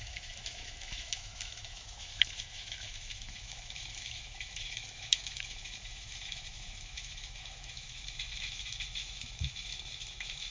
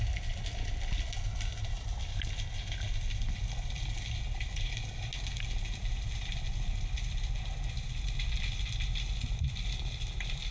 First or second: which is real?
second